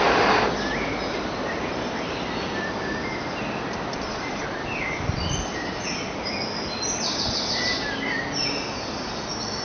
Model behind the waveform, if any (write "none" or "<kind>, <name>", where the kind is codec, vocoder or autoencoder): none